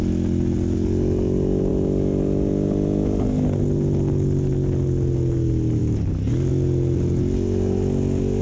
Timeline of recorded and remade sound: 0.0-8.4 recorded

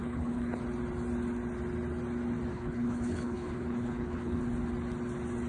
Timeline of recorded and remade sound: 0.0-0.6 remade; 0.6-2.5 recorded; 2.5-4.4 remade; 4.4-5.5 recorded